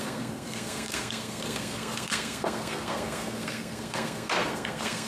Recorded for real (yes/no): no